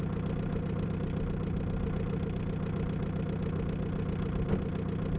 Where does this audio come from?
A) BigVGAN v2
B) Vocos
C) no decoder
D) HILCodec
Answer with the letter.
C